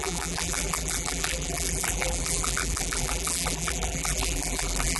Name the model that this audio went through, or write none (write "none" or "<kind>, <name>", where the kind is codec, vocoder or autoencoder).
vocoder, BigVGAN v2